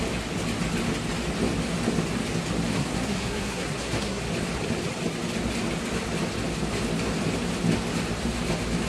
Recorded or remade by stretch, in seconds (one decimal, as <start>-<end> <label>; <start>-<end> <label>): 0.0-2.8 recorded; 2.8-4.2 remade; 4.2-8.9 recorded